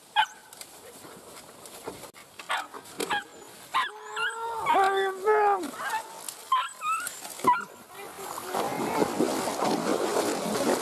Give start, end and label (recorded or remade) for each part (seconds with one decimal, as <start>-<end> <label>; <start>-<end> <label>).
0.0-0.4 recorded; 0.4-2.3 remade; 2.3-10.8 recorded